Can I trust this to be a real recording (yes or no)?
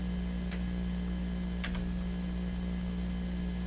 yes